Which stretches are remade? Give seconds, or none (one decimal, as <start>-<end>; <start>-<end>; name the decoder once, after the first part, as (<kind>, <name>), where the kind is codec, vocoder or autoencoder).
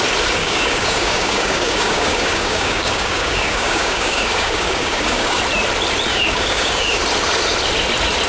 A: 0.4-5.4 (codec, DAC); 6.1-7.0